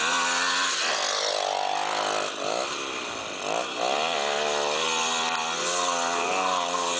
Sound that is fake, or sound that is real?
real